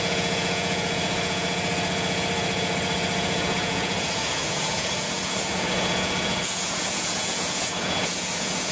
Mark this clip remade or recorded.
remade